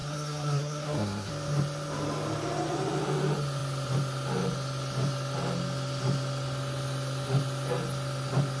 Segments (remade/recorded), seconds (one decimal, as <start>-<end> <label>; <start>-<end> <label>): 0.0-1.3 remade; 1.3-8.6 recorded